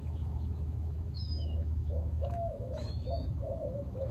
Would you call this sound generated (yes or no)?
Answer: yes